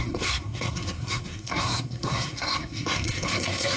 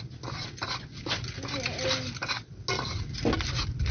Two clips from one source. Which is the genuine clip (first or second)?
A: second